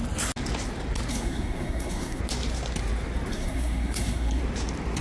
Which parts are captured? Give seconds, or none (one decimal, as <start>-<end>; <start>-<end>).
0.0-1.1; 2.2-3.3; 4.4-5.0